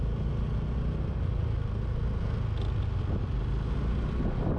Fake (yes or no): no